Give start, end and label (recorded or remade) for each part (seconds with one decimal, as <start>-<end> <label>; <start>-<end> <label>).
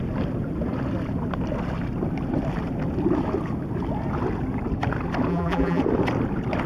0.0-5.3 recorded; 5.3-5.8 remade; 5.8-6.7 recorded